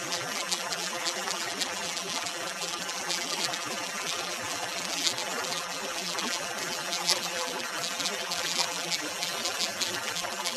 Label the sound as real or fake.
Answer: fake